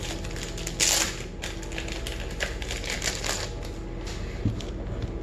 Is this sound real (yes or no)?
yes